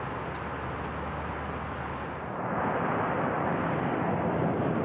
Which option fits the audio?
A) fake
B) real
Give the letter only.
B